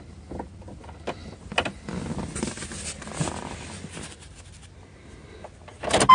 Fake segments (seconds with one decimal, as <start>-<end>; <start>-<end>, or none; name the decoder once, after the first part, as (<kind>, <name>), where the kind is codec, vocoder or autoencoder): none